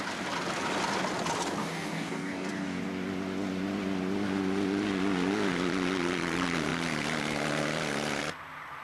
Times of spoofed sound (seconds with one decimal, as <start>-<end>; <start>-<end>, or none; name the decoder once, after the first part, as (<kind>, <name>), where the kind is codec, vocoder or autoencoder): 1.6-2.8 (codec, DAC)